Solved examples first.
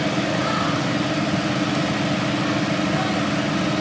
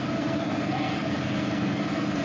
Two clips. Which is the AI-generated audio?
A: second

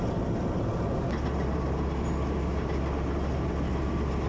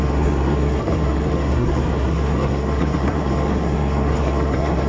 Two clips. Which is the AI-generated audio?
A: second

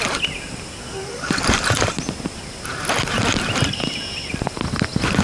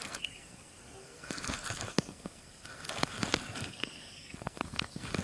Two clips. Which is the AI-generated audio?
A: second